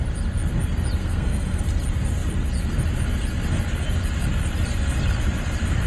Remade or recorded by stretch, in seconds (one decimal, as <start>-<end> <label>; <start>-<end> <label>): 0.0-1.0 recorded; 1.0-1.6 remade; 1.6-5.9 recorded